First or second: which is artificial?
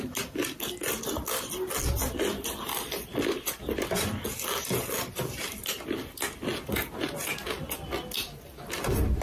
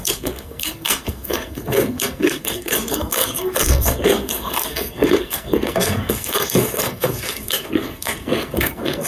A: second